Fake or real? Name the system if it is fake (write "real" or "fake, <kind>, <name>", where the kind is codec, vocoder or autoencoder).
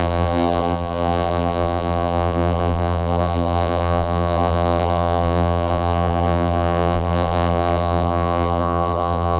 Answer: fake, vocoder, BigVGAN v2